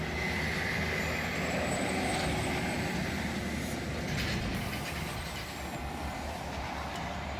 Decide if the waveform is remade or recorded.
remade